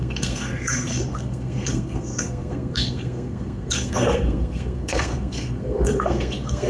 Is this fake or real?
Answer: fake